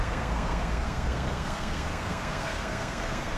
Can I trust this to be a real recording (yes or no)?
no